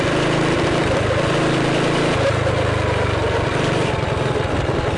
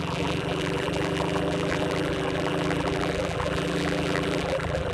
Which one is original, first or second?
first